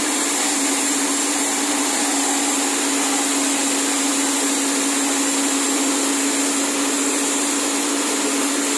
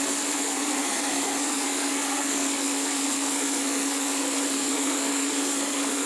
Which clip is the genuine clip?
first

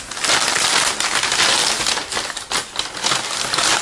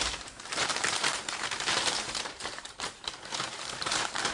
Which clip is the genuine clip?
first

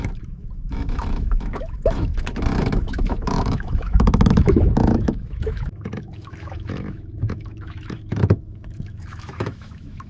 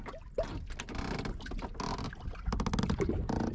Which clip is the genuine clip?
second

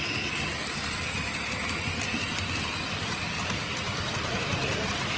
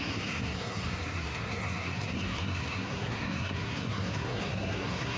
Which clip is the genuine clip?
first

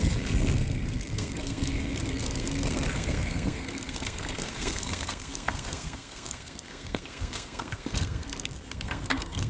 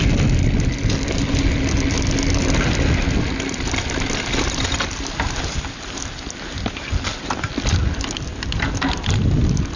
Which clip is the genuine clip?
second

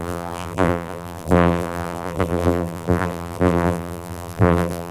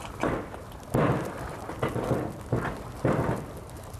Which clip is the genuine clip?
second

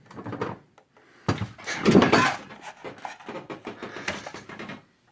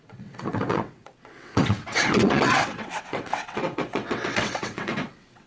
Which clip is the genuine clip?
first